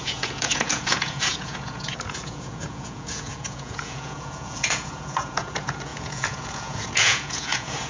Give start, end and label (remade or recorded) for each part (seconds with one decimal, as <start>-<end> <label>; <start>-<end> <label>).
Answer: 0.0-7.9 remade